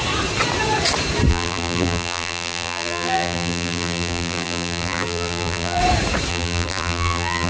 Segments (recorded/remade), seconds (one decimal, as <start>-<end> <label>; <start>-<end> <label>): 0.0-1.3 recorded; 1.3-5.8 remade; 5.8-6.3 recorded; 6.3-7.5 remade